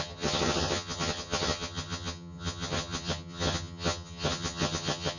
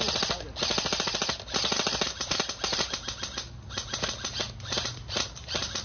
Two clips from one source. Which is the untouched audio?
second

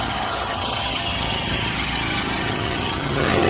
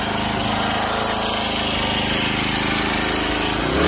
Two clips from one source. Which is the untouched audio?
second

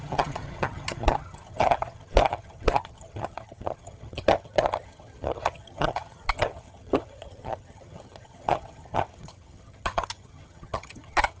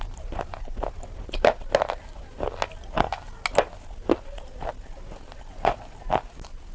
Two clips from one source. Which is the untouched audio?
second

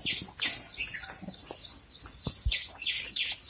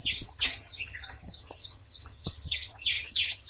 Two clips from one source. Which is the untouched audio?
first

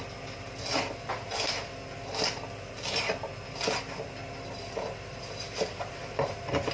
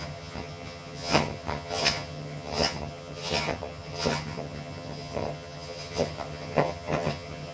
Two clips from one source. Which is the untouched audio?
first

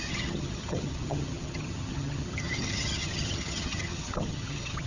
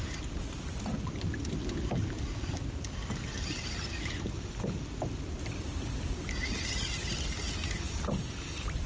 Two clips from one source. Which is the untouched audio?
second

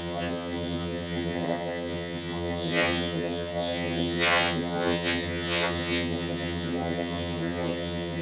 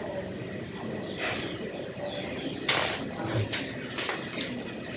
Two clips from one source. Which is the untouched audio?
second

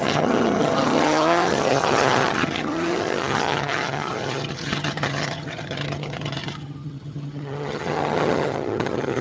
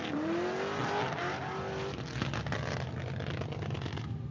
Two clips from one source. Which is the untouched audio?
second